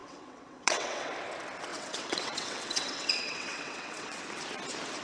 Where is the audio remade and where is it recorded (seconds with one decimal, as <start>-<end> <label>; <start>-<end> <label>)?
0.0-1.1 remade; 1.1-1.7 recorded; 1.7-4.2 remade; 4.2-5.0 recorded

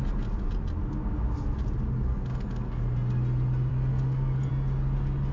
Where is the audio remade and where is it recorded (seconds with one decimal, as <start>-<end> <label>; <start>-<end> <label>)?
0.0-2.3 recorded; 2.3-2.8 remade; 2.8-3.7 recorded; 3.7-4.5 remade; 4.5-5.3 recorded

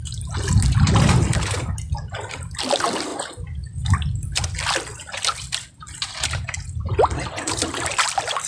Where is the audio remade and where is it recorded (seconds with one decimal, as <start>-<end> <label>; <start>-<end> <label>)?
0.0-8.5 recorded

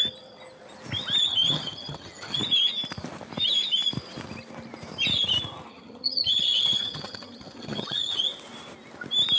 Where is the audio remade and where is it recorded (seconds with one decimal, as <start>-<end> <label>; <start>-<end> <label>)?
0.0-1.3 recorded; 1.3-2.4 remade; 2.4-5.7 recorded; 5.7-8.2 remade; 8.2-9.4 recorded

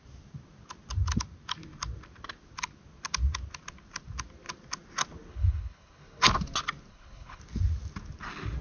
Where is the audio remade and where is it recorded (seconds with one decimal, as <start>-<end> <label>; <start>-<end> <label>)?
0.0-5.3 recorded; 5.3-6.2 remade; 6.2-6.9 recorded; 6.9-7.4 remade; 7.4-8.6 recorded